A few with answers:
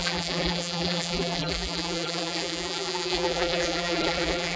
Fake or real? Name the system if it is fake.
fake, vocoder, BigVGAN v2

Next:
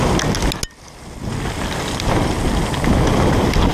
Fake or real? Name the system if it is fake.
real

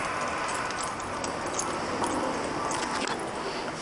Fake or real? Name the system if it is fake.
real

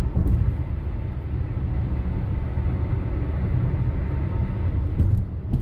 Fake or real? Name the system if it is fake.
real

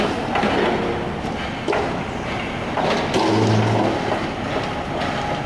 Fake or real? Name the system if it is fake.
real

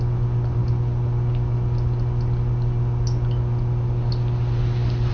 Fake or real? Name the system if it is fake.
real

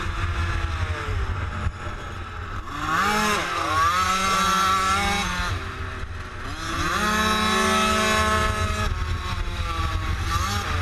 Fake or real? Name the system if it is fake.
real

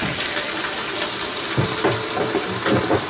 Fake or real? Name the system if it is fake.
real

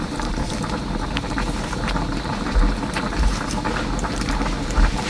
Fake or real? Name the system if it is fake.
fake, vocoder, BigVGAN v2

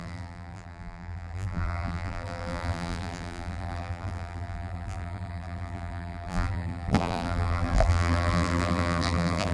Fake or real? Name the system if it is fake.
fake, vocoder, BigVGAN v2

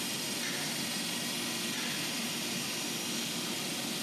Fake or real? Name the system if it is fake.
real